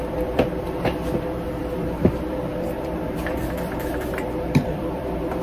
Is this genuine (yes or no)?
no